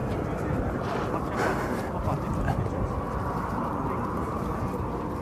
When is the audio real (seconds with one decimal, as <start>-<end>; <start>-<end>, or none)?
0.0-5.2